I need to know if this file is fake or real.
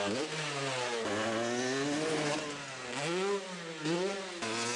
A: real